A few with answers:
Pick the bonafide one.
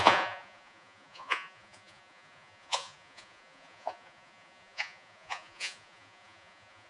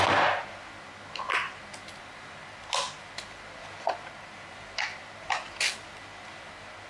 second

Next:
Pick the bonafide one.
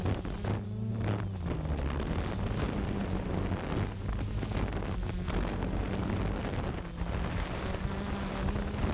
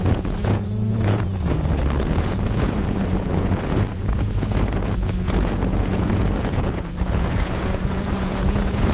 first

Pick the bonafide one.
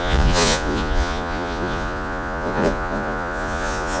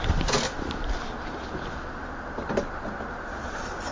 second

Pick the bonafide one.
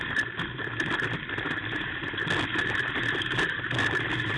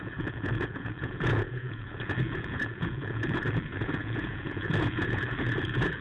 first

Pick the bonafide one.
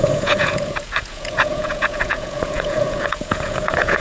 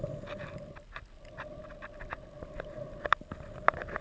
second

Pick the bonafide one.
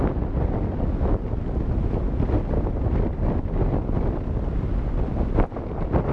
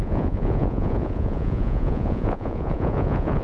first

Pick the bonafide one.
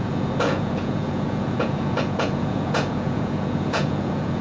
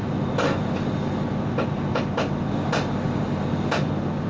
second